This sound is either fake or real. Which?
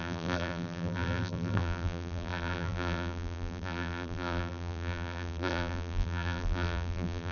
fake